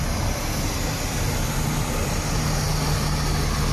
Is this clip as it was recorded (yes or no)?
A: yes